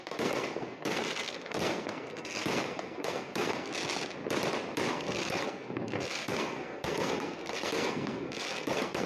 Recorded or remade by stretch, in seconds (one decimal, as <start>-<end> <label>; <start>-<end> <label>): 0.0-3.7 remade; 3.7-4.9 recorded; 4.9-9.1 remade